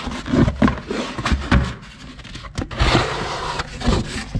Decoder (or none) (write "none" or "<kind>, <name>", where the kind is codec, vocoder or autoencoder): none